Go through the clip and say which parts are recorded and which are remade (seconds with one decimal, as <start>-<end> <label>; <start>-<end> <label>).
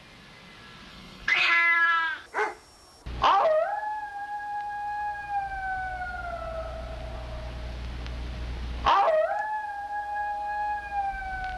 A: 0.0-0.9 recorded; 0.9-1.5 remade; 1.5-11.6 recorded